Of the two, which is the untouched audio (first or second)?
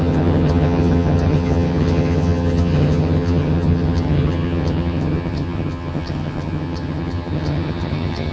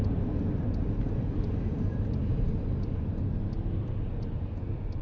second